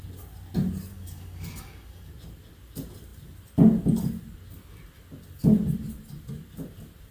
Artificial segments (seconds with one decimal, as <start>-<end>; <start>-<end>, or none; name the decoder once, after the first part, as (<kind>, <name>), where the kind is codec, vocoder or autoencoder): 0.9-2.1 (codec, DAC)